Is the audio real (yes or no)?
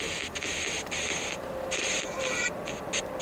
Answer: no